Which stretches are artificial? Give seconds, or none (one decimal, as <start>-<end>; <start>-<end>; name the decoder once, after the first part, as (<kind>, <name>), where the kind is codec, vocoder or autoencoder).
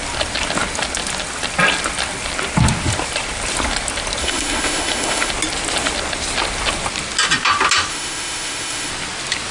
4.2-5.3 (autoencoder, DAC-VAE); 7.9-8.9